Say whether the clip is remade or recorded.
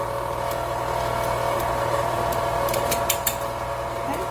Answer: recorded